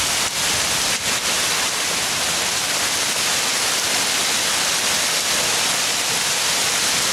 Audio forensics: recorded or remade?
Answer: recorded